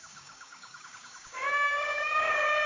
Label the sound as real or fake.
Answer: fake